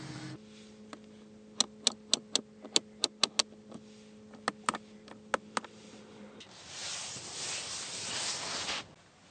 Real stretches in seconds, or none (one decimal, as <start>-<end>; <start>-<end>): 0.0-9.3